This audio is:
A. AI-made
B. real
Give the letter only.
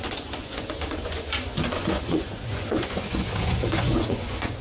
A